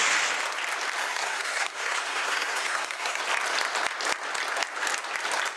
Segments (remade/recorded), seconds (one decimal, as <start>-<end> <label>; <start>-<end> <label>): 0.0-1.0 recorded; 1.0-3.2 remade; 3.2-5.6 recorded